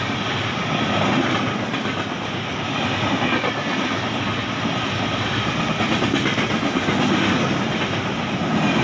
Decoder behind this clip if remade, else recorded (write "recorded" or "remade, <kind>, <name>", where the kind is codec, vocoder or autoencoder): recorded